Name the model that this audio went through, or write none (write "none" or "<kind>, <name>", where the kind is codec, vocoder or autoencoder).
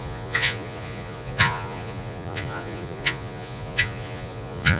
vocoder, Vocos